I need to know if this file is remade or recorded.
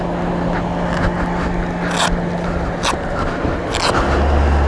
recorded